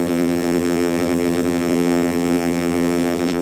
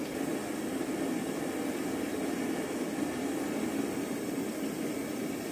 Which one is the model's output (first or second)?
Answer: first